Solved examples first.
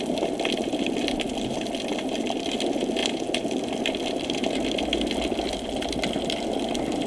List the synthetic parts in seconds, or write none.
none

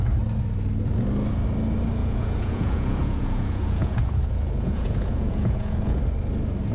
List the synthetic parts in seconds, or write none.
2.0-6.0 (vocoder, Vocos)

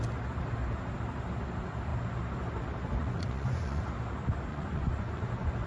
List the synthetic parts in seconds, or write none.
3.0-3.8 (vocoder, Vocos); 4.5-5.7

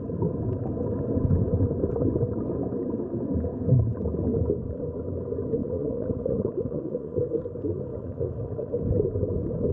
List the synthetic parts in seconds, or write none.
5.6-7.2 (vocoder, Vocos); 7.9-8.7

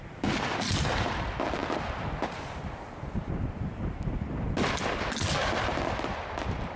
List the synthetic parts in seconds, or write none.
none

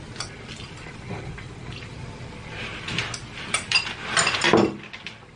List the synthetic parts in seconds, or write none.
none

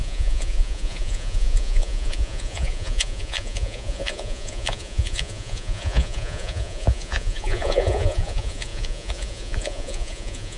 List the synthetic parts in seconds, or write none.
0.0-10.6 (vocoder, Vocos)